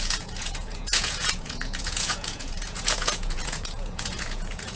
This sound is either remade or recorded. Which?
remade